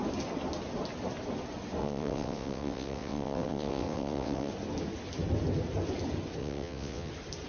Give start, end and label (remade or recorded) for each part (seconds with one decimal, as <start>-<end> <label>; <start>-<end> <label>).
0.0-1.8 recorded; 1.8-4.5 remade; 4.5-6.4 recorded; 6.4-7.1 remade; 7.1-7.5 recorded